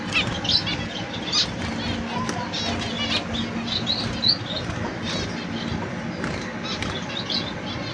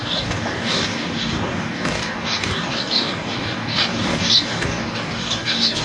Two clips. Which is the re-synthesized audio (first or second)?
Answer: second